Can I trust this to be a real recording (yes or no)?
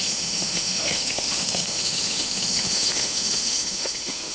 no